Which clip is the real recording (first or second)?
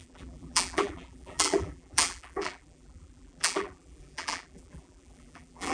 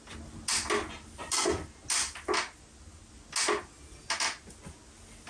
second